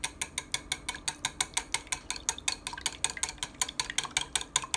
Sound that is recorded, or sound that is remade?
recorded